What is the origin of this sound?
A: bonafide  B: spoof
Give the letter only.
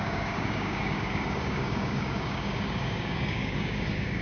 B